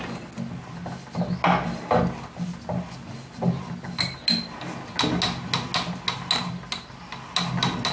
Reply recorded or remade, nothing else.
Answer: recorded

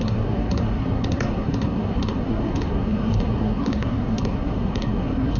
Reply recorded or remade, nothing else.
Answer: remade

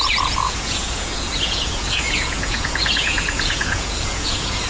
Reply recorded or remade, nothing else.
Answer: remade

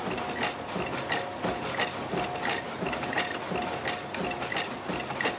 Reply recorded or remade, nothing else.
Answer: recorded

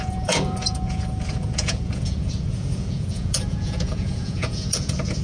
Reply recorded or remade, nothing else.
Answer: remade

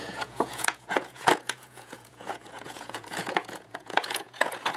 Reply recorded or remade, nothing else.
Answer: remade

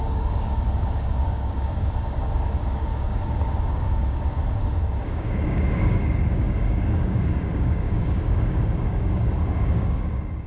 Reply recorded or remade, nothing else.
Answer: remade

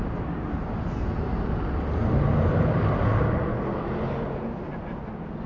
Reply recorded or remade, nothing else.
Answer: recorded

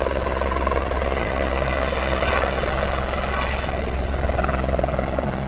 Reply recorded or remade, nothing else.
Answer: remade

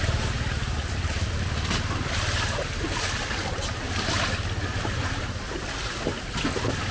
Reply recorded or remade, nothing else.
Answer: recorded